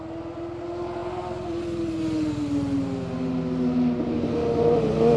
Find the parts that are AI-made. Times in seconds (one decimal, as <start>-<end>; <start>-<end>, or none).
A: none